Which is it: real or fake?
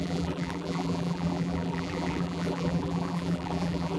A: fake